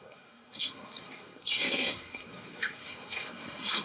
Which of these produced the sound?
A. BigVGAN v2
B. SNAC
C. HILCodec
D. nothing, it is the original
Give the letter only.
B